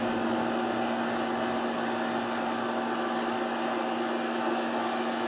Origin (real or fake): real